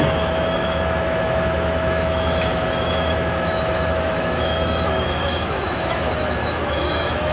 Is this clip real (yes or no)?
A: no